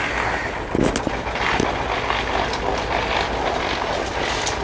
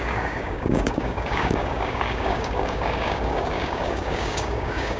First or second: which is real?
first